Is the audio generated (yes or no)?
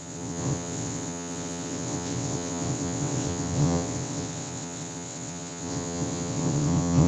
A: yes